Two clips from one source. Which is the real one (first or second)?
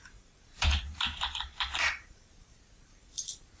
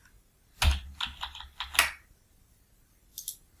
second